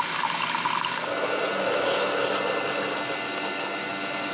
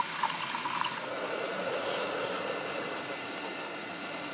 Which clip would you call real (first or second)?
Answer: first